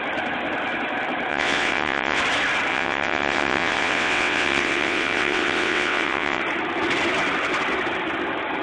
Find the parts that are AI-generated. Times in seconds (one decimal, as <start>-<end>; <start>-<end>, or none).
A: 1.3-2.2; 2.7-6.4